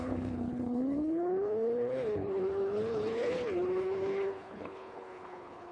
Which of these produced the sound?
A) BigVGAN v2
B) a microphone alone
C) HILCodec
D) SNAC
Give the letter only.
C